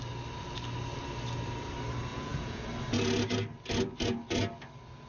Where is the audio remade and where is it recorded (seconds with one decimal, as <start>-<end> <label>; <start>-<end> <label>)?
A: 0.0-2.1 recorded; 2.1-2.6 remade; 2.6-5.1 recorded